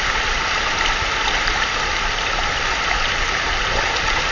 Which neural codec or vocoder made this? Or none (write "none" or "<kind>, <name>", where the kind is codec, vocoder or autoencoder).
none